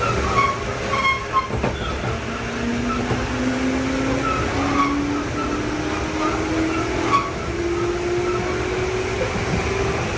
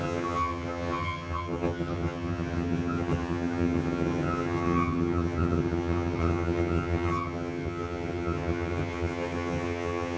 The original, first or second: first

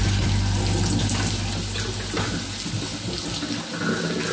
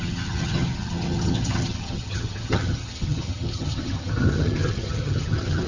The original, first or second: first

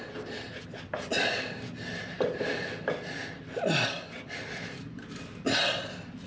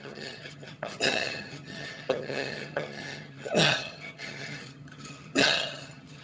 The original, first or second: first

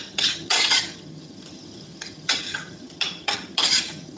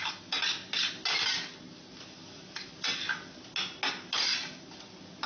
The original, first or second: second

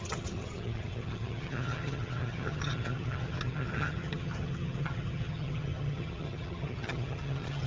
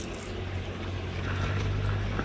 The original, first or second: second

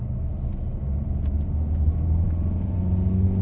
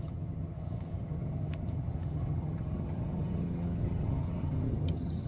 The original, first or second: first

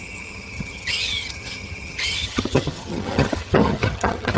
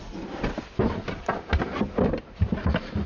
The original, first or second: second